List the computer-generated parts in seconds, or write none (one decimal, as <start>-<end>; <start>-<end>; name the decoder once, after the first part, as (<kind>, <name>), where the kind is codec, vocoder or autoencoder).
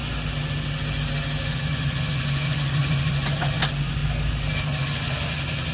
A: 1.5-4.0 (vocoder, Vocos); 4.8-5.7